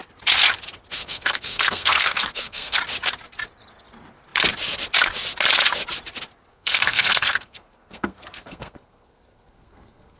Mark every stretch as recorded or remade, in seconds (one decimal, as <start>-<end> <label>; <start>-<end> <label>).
0.0-0.9 recorded; 0.9-2.8 remade; 2.8-6.5 recorded; 6.5-10.2 remade